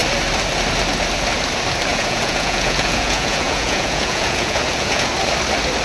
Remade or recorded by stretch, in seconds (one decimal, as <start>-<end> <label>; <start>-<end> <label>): 0.0-1.9 recorded; 1.9-5.1 remade; 5.1-5.8 recorded